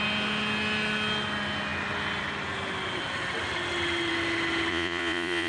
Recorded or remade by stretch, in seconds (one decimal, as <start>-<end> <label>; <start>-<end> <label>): 0.0-4.7 recorded; 4.7-5.5 remade